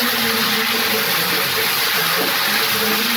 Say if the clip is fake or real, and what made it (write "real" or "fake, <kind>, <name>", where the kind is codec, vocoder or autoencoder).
real